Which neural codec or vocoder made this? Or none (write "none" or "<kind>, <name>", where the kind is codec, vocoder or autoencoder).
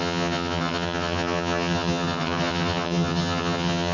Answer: vocoder, HiFi-GAN